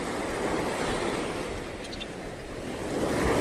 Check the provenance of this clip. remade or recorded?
recorded